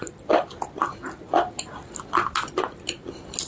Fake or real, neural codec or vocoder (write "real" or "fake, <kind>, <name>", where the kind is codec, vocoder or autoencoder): real